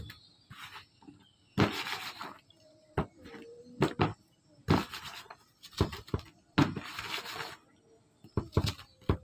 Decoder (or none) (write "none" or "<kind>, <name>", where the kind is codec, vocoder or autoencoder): none